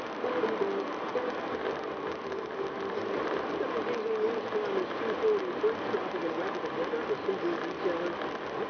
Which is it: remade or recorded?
recorded